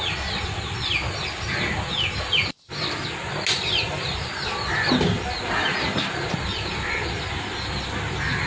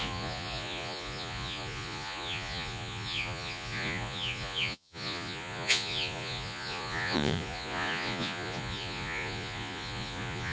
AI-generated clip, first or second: second